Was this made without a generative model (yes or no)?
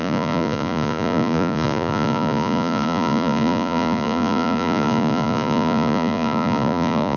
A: no